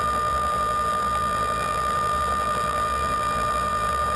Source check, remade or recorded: remade